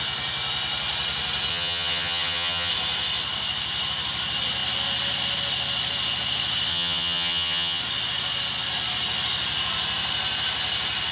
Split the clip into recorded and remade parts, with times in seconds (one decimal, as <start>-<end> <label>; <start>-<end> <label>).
0.0-1.5 recorded; 1.5-2.7 remade; 2.7-6.7 recorded; 6.7-7.8 remade; 7.8-11.1 recorded